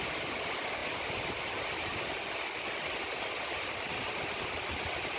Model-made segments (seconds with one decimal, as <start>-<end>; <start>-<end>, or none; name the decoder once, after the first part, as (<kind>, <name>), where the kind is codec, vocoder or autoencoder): 0.0-0.8 (vocoder, BigVGAN v2); 3.9-5.2

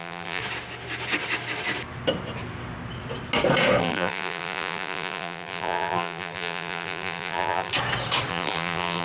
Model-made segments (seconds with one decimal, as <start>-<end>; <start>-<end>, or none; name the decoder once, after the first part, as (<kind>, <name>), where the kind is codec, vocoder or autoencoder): 0.0-0.4 (vocoder, BigVGAN v2); 3.8-7.7; 8.3-9.0

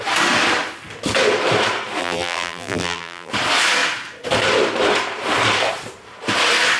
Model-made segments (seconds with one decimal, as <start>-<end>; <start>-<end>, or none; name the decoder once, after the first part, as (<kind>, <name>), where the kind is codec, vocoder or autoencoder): 2.0-3.3 (vocoder, BigVGAN v2)

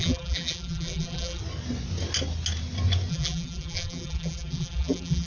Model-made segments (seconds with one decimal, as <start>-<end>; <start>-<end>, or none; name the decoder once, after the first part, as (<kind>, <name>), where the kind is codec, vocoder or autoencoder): 0.0-1.4 (vocoder, BigVGAN v2); 3.1-5.3

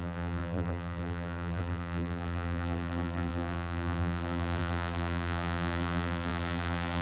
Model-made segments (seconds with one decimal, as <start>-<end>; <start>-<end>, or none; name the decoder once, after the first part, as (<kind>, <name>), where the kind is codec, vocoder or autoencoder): 0.0-7.0 (vocoder, BigVGAN v2)

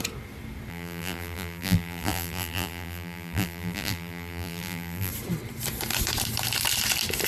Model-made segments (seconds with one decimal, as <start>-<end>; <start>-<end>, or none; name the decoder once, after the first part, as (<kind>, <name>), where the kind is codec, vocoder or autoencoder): 0.7-5.1 (vocoder, BigVGAN v2)

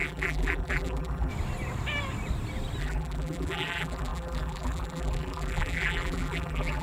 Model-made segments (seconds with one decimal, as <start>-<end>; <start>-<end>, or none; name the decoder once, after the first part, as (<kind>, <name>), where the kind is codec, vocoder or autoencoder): 0.0-1.3 (vocoder, BigVGAN v2); 2.8-6.8